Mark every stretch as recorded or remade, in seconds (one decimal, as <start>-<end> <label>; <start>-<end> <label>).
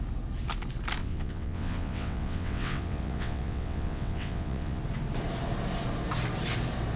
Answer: 0.0-1.0 recorded; 1.0-4.8 remade; 4.8-7.0 recorded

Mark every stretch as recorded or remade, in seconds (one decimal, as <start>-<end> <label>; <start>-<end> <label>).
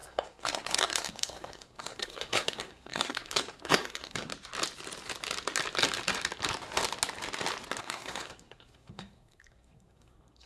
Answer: 0.0-4.3 remade; 4.3-7.8 recorded; 7.8-10.5 remade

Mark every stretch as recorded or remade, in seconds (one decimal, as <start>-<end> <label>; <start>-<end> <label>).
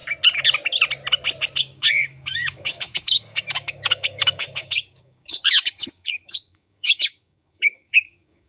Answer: 0.0-1.6 recorded; 1.6-8.5 remade